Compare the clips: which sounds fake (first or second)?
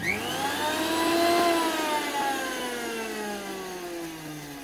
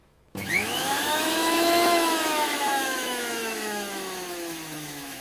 second